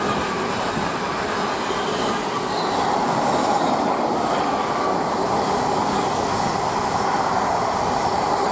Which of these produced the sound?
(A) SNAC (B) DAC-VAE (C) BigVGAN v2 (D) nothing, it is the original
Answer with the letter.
D